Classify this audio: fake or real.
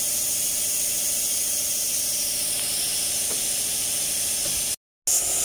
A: real